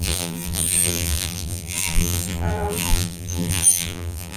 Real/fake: fake